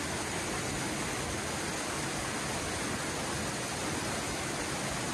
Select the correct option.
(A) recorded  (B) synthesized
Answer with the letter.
A